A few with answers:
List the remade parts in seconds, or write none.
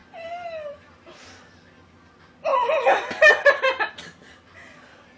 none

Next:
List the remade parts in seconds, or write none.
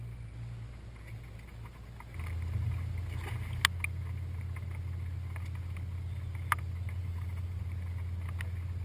7.0-7.6 (vocoder, BigVGAN v2)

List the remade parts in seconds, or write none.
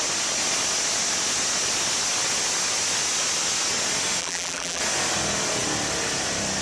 4.2-4.8 (vocoder, BigVGAN v2)